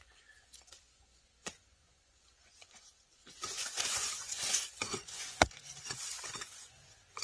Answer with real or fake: fake